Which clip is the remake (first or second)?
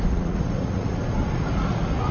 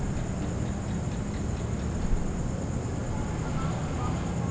first